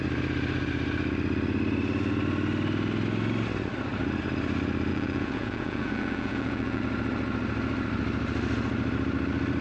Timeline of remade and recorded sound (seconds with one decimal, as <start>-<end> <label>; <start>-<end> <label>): 0.0-4.9 recorded; 4.9-6.8 remade; 6.8-9.6 recorded